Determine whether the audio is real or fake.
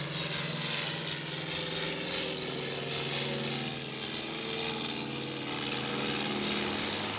real